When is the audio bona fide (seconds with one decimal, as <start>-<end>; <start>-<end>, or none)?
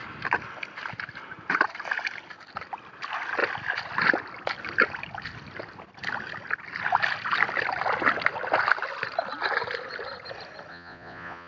0.0-10.7